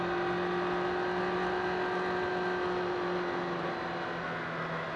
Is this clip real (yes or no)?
yes